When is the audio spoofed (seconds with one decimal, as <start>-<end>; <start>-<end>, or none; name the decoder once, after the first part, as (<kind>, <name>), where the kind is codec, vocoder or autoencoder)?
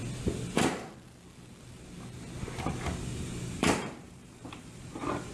3.6-4.8 (vocoder, BigVGAN v2)